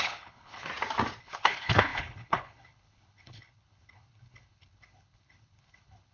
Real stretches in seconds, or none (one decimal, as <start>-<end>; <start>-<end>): 0.7-1.2